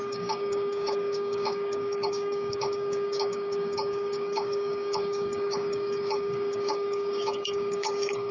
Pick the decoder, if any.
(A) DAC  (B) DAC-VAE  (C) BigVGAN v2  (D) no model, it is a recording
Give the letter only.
A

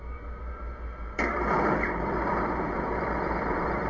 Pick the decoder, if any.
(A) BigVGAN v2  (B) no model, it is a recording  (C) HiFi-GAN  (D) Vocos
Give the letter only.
A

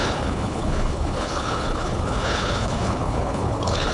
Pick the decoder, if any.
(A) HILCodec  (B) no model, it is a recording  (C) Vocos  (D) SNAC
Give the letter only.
A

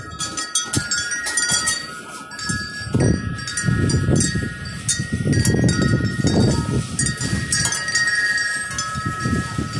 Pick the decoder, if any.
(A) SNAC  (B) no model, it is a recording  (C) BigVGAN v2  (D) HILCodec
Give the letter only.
B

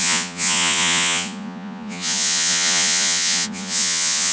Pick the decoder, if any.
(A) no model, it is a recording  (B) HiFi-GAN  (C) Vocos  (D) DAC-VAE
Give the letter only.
C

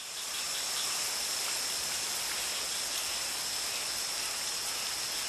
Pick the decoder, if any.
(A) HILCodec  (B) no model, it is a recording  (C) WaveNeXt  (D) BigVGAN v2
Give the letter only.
D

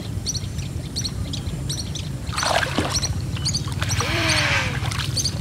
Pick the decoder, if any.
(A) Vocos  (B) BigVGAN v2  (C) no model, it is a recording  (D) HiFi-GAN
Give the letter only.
B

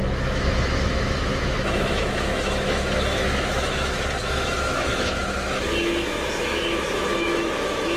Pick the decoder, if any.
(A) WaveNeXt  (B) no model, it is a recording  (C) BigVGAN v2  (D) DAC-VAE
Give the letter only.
D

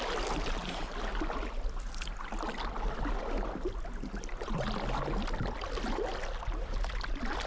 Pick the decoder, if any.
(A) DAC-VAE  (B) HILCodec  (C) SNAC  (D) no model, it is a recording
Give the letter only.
D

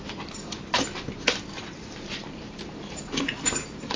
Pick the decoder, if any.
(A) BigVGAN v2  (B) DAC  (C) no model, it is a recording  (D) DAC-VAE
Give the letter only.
A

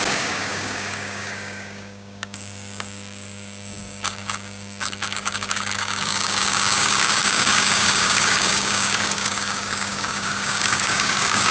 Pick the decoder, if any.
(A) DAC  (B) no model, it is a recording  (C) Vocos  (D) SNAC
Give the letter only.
A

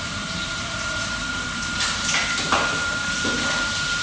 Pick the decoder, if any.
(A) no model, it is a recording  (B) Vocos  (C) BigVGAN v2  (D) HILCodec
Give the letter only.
C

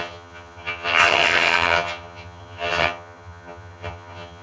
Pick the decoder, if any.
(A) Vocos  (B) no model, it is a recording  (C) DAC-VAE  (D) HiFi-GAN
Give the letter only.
D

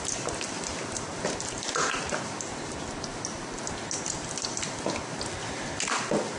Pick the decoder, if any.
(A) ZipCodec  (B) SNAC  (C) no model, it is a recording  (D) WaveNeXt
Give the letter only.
C